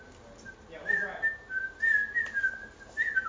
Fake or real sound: real